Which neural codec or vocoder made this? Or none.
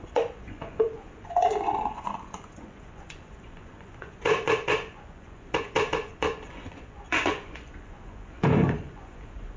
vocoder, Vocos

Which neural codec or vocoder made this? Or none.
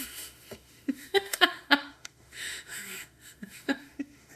autoencoder, DAC-VAE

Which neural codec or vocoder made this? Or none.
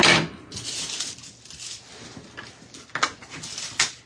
none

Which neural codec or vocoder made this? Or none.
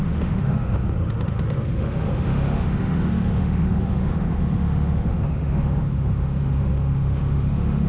autoencoder, DAC-VAE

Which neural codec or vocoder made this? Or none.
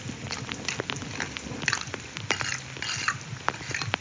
none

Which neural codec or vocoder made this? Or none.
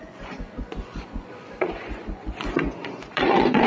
vocoder, Vocos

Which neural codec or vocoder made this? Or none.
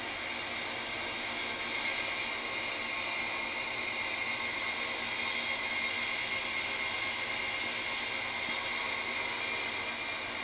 none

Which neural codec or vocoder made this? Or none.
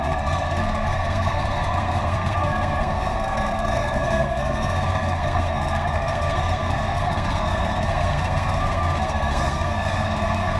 codec, SNAC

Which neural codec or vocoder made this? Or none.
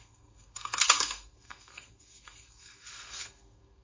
codec, SNAC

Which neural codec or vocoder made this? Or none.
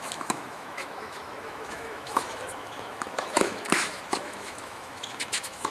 autoencoder, DAC-VAE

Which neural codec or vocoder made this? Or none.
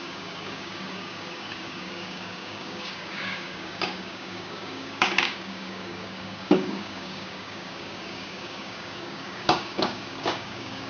codec, DAC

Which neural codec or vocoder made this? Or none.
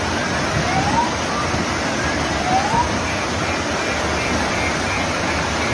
none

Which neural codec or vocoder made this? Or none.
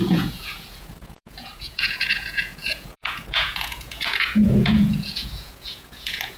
vocoder, Vocos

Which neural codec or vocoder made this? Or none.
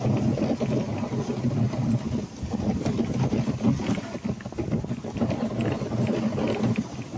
none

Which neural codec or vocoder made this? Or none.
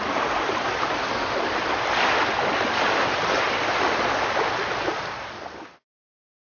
none